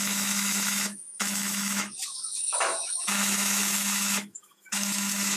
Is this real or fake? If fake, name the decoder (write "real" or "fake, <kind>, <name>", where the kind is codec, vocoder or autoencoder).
fake, autoencoder, DAC-VAE